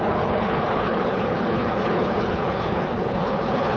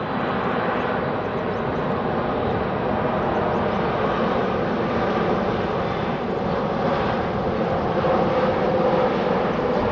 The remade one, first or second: first